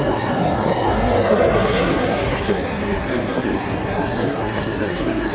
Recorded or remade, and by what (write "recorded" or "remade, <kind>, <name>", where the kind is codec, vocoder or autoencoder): remade, codec, SNAC